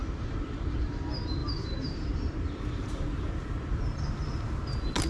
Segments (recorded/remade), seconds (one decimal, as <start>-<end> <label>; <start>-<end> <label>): 0.0-0.9 remade; 0.9-1.4 recorded; 1.4-4.0 remade; 4.0-5.1 recorded